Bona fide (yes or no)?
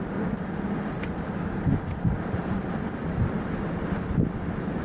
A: yes